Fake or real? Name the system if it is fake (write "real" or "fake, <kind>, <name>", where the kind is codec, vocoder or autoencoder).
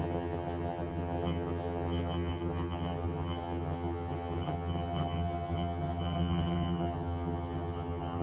fake, vocoder, HiFi-GAN